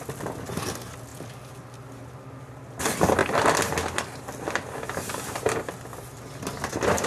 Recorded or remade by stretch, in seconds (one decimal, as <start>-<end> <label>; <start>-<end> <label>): 0.0-7.1 recorded